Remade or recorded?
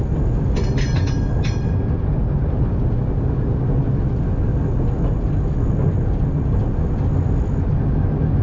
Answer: recorded